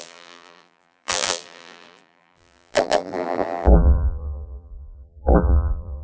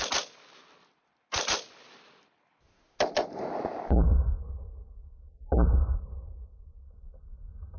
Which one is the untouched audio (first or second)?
second